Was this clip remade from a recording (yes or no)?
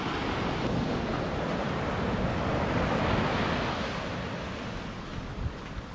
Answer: no